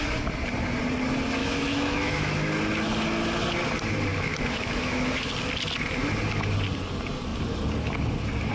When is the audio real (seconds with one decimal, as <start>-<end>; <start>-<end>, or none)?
0.0-1.4; 2.5-4.1; 5.3-8.5